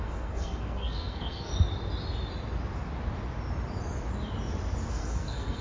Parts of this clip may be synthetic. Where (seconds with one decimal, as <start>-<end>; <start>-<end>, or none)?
0.0-1.5; 4.9-5.6